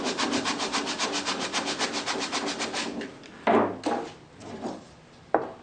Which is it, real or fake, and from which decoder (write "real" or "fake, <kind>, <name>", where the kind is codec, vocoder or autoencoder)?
real